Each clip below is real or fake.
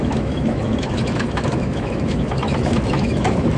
fake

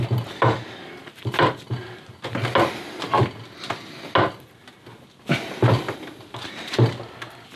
real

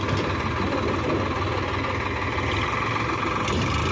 real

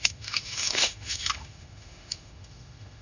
fake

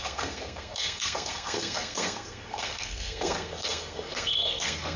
fake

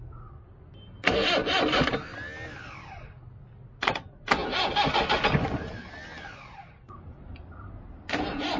real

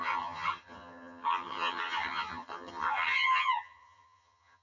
fake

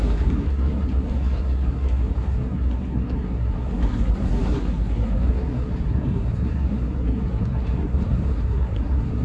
fake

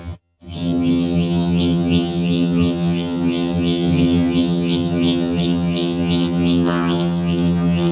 fake